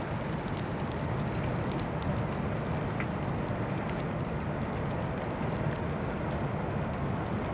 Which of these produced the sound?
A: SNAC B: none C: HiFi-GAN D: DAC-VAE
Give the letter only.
B